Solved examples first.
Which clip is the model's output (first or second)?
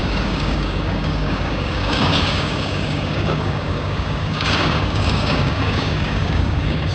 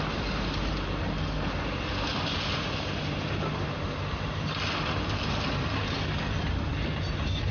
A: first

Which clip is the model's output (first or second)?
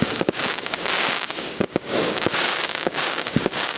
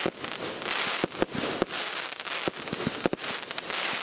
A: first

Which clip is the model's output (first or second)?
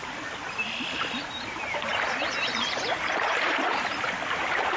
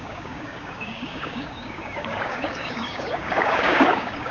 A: second